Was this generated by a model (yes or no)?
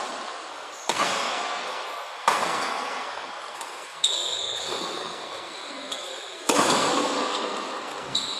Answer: yes